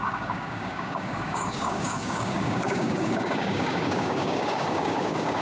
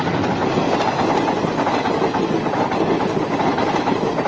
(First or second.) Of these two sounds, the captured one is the second